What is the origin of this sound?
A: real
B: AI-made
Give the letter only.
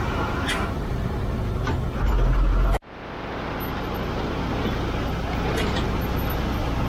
A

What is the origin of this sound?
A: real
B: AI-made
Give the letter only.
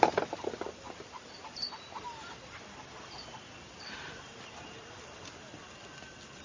A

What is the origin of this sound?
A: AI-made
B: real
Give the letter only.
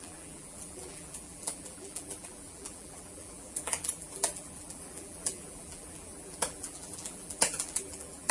A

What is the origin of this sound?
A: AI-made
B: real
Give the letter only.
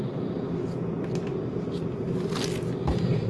B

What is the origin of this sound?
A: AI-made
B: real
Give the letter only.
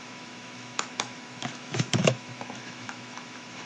A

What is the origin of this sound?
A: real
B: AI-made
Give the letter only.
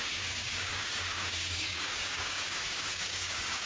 B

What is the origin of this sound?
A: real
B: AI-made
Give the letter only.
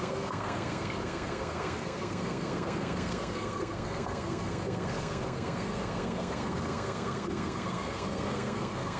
B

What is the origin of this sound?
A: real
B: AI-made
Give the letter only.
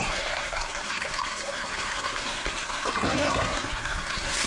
B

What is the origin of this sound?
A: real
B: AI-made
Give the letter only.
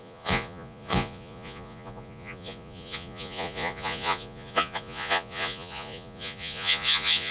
B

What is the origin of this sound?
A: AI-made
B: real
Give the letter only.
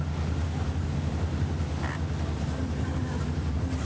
B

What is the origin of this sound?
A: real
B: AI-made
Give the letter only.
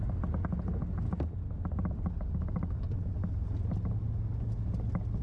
A